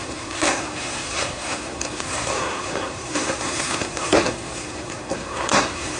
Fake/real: fake